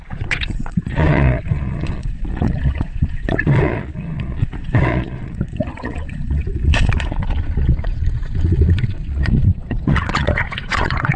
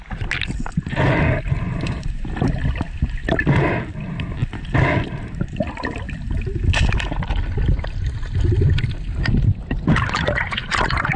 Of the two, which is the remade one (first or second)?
first